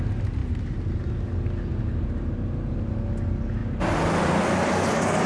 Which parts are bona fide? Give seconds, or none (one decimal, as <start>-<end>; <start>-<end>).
0.0-5.3